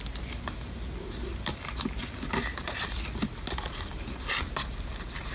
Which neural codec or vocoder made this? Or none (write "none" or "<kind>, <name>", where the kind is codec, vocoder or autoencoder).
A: none